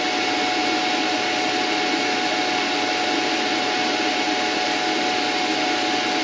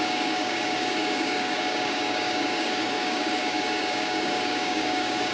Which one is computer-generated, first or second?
second